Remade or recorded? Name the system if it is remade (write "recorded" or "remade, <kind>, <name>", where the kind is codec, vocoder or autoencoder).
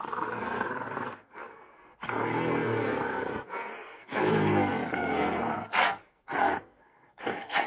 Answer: remade, codec, SNAC